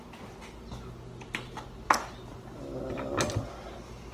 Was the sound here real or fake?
real